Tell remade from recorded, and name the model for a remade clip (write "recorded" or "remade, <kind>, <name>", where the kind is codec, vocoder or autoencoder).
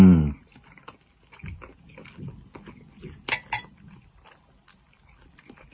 recorded